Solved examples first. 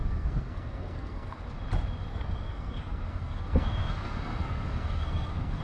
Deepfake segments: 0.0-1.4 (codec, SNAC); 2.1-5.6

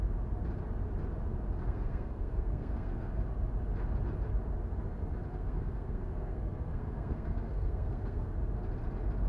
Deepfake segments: 1.6-3.2 (codec, SNAC); 5.3-8.3

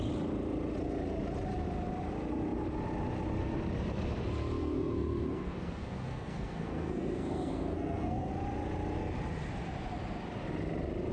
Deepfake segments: 4.6-8.3 (codec, SNAC)

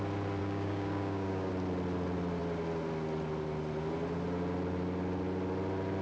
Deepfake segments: 0.4-1.5 (codec, DAC)

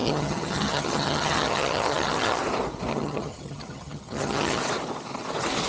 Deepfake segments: 0.0-2.4 (vocoder, HiFi-GAN); 2.9-4.6

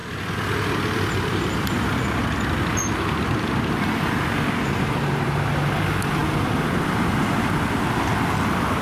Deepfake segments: none

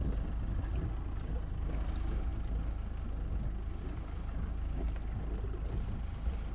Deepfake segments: none

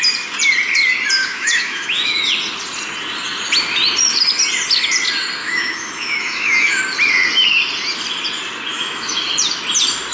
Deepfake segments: 1.2-2.2 (autoencoder, DAC-VAE); 5.4-6.8; 8.7-9.2